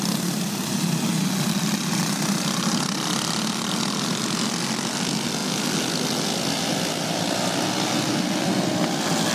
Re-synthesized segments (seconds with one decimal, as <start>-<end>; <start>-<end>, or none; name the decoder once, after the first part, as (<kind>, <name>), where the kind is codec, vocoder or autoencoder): none